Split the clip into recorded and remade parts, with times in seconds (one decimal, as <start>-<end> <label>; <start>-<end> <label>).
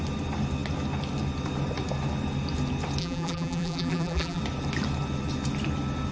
0.0-3.0 recorded; 3.0-4.4 remade; 4.4-6.1 recorded